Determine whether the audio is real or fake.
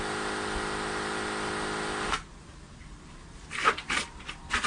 real